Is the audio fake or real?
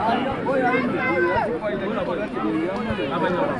real